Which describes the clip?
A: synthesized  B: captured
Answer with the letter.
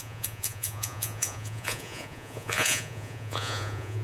A